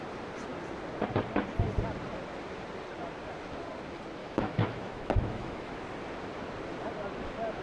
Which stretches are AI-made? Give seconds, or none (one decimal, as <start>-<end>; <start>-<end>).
4.2-5.8